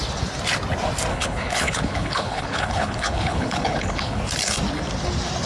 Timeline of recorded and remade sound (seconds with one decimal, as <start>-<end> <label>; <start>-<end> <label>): 0.0-1.1 recorded; 1.1-4.2 remade; 4.2-5.5 recorded